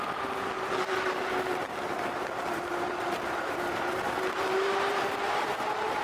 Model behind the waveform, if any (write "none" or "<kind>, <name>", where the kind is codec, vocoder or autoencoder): vocoder, BigVGAN v2